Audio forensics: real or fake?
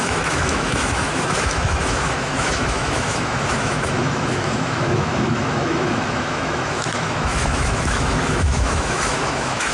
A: fake